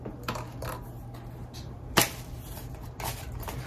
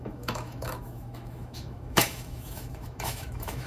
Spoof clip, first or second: second